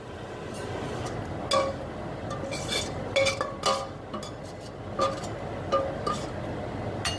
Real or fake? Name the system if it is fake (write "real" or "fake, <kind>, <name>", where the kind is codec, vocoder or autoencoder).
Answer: real